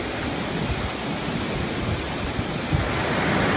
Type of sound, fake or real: real